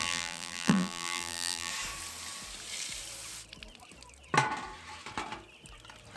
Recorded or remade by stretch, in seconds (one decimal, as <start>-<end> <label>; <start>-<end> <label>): 0.0-1.7 remade; 1.7-6.2 recorded